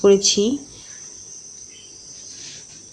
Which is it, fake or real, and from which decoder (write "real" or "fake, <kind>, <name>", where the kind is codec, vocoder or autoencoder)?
fake, vocoder, BigVGAN v2